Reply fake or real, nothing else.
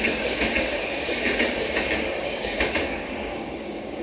fake